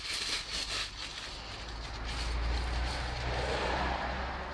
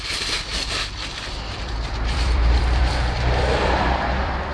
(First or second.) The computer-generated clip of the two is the second